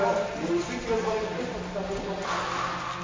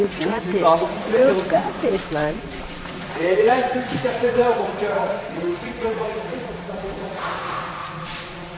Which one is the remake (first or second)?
second